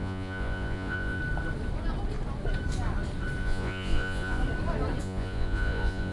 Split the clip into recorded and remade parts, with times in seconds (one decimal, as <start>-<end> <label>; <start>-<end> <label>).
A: 0.0-1.2 remade; 1.2-3.4 recorded; 3.4-4.4 remade; 4.4-5.0 recorded; 5.0-6.1 remade